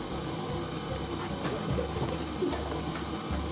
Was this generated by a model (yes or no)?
no